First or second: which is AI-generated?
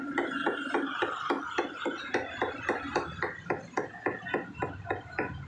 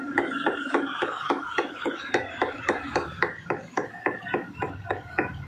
second